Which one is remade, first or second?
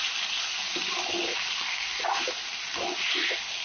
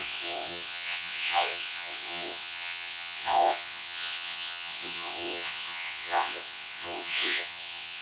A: second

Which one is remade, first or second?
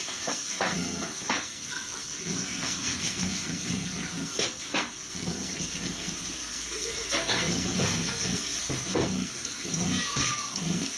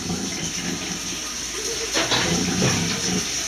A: first